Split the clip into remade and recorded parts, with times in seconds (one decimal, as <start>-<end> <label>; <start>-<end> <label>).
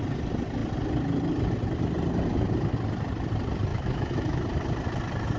0.0-3.7 recorded; 3.7-4.4 remade; 4.4-5.4 recorded